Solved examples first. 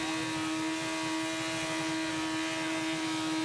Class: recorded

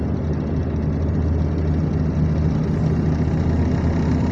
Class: recorded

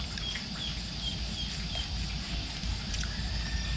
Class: recorded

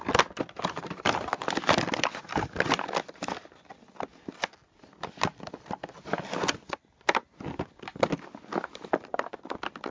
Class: recorded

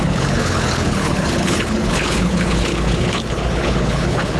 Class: remade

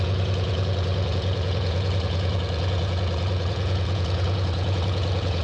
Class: remade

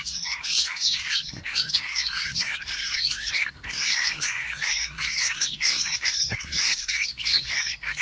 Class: remade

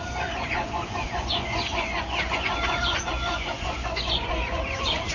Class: remade